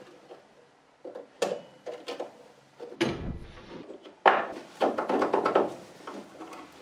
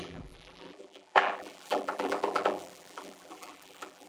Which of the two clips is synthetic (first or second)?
second